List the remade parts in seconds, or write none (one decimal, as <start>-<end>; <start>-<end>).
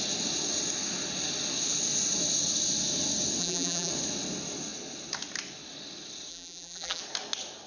3.4-3.9; 6.3-7.0